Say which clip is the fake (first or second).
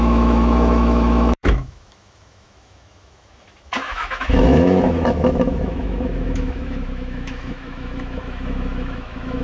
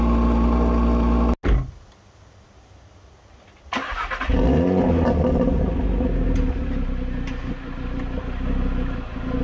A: first